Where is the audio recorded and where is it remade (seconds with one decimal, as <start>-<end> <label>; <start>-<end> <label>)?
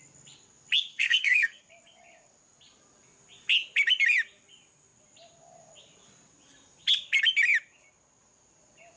0.0-0.9 recorded; 0.9-1.6 remade; 1.6-9.0 recorded